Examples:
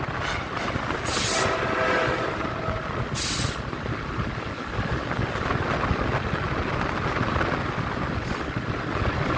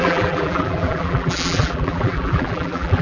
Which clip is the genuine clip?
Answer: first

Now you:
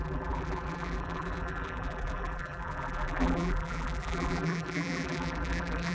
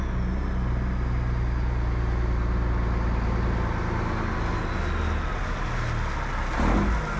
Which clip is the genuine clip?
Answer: second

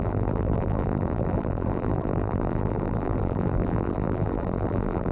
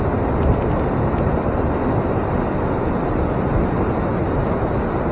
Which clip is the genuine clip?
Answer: second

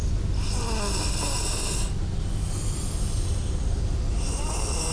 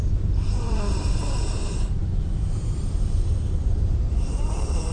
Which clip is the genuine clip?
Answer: first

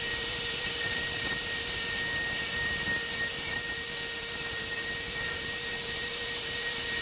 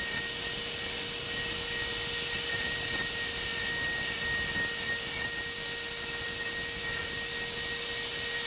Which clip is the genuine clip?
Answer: second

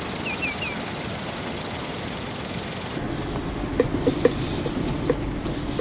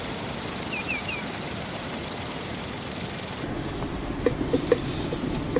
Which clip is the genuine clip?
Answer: first